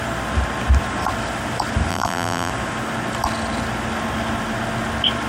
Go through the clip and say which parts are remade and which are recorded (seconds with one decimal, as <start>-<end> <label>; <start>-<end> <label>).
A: 0.0-1.9 recorded; 1.9-2.5 remade; 2.5-5.3 recorded